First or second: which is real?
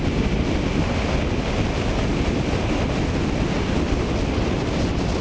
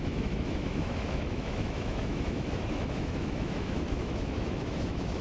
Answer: first